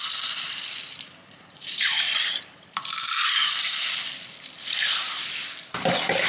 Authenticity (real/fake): fake